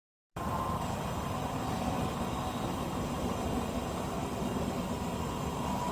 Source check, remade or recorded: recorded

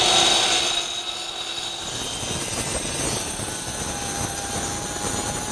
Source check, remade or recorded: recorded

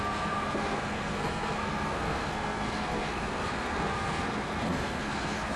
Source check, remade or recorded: remade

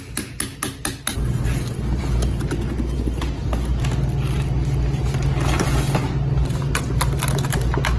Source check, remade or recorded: recorded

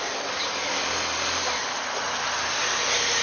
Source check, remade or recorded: recorded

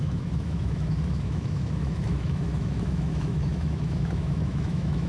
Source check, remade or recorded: remade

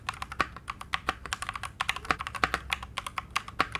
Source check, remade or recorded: recorded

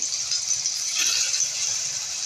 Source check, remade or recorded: recorded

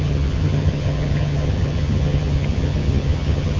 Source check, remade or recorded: remade